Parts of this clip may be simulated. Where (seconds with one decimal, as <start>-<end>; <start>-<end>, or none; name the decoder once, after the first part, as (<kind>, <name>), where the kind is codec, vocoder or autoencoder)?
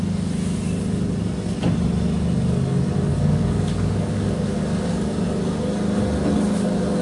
3.1-4.6 (codec, DAC)